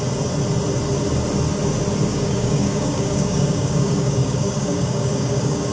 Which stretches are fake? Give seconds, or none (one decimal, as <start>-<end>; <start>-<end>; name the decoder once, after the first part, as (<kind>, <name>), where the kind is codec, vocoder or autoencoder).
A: 2.1-5.7 (codec, DAC)